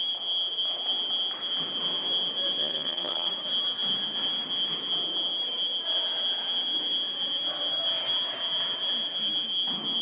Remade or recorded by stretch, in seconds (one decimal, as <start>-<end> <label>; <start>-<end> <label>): 0.0-2.6 recorded; 2.6-3.3 remade; 3.3-10.0 recorded